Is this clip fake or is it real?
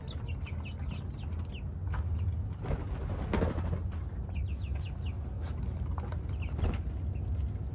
real